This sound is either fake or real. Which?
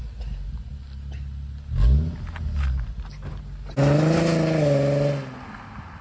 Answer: real